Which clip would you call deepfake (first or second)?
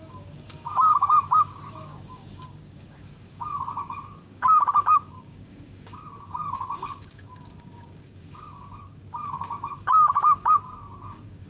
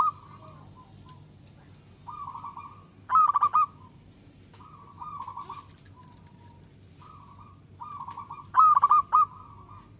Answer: first